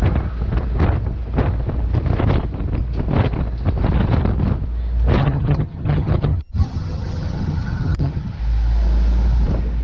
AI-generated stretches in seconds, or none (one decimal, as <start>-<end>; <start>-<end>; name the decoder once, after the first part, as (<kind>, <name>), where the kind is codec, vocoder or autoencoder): 5.2-8.4 (vocoder, HiFi-GAN)